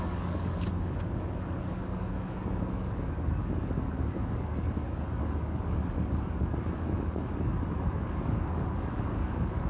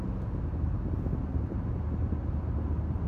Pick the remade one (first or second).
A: first